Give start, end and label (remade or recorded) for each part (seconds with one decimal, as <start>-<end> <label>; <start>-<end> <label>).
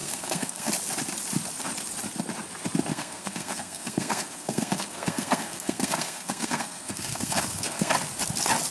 0.0-0.7 remade; 0.7-2.9 recorded; 2.9-7.9 remade; 7.9-8.7 recorded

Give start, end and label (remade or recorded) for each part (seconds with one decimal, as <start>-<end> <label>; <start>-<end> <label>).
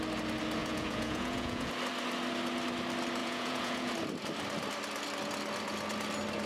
0.0-0.6 recorded; 0.6-1.7 remade; 1.7-3.2 recorded; 3.2-3.9 remade; 3.9-6.5 recorded